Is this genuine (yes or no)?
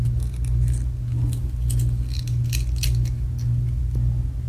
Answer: yes